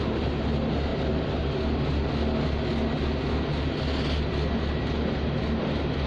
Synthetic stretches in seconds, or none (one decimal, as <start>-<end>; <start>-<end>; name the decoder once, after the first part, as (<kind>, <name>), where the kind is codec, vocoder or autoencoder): none